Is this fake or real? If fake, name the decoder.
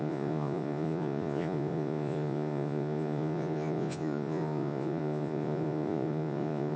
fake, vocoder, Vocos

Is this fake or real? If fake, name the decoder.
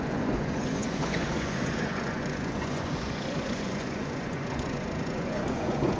fake, vocoder, Vocos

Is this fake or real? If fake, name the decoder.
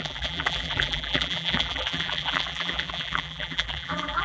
fake, vocoder, BigVGAN v2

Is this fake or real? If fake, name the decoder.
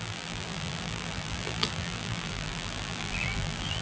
fake, vocoder, BigVGAN v2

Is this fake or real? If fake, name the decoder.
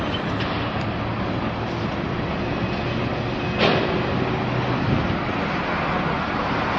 real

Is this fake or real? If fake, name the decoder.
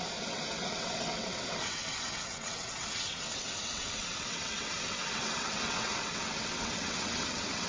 fake, vocoder, WaveNeXt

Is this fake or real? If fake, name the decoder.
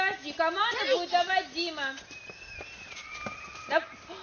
real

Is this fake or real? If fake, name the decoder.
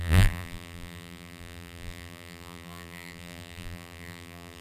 fake, vocoder, BigVGAN v2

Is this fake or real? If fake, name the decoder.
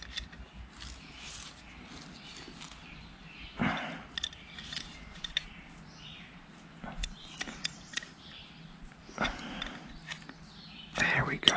real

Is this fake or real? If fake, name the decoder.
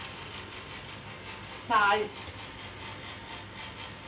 real